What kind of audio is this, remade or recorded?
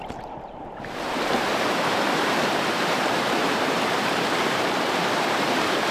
remade